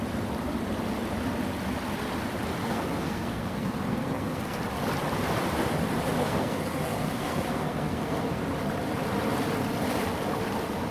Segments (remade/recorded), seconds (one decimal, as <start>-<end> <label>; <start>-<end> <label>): 0.0-2.6 recorded; 2.6-4.6 remade; 4.6-6.2 recorded; 6.2-8.4 remade; 8.4-10.9 recorded